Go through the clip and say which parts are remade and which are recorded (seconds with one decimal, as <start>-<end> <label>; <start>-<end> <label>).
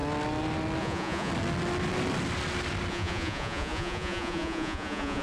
0.0-0.8 recorded; 0.8-1.3 remade; 1.3-2.9 recorded; 2.9-5.2 remade